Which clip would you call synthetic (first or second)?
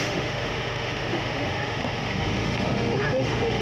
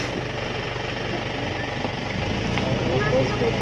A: first